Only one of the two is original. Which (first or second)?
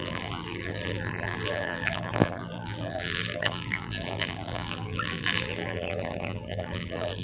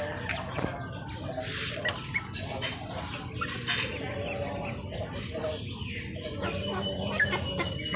second